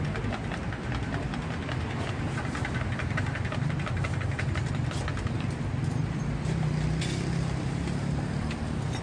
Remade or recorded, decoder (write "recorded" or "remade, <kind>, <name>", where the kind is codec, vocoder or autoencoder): recorded